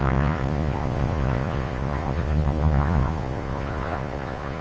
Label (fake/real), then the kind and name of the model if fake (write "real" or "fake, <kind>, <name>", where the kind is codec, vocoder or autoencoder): fake, vocoder, Vocos